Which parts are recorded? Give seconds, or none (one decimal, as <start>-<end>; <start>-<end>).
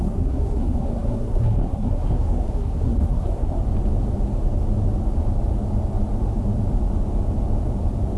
3.6-8.2